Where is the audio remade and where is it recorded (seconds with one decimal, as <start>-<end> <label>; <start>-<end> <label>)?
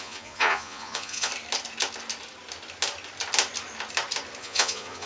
0.0-1.3 remade; 1.3-4.4 recorded; 4.4-5.1 remade